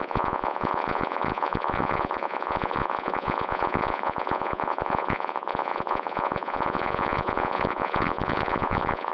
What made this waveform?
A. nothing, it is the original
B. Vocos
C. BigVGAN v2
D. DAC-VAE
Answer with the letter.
B